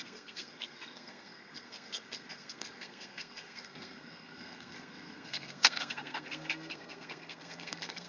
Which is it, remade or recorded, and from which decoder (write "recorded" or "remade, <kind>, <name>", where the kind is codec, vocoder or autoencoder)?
remade, codec, SNAC